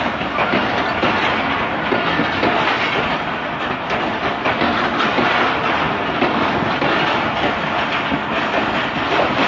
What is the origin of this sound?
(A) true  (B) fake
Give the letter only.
A